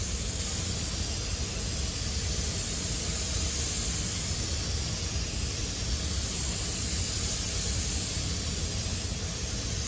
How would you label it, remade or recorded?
recorded